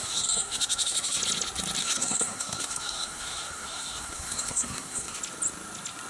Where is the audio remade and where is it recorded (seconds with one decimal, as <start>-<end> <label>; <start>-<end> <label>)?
0.0-1.2 remade; 1.2-1.8 recorded; 1.8-5.2 remade; 5.2-6.1 recorded